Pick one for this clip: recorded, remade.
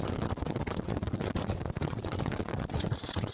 remade